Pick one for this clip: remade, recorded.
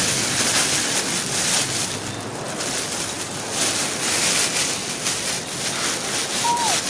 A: recorded